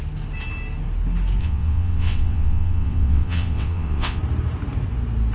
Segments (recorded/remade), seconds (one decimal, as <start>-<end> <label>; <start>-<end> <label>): 0.0-1.4 recorded; 1.4-4.2 remade; 4.2-5.3 recorded